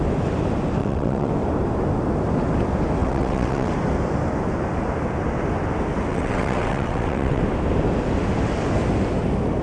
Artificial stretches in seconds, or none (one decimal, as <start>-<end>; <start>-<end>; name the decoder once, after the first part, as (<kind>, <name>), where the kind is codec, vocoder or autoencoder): 0.8-1.3 (vocoder, WaveNeXt); 3.0-3.7; 6.1-7.4